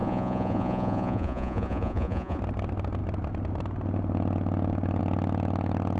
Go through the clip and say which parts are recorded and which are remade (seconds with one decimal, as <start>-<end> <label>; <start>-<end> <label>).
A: 0.0-2.4 remade; 2.4-6.0 recorded